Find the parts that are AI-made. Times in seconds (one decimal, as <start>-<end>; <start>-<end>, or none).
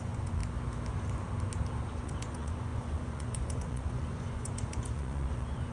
0.0-0.4; 1.9-5.7